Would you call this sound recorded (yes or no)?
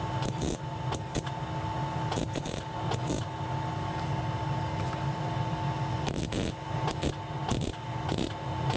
yes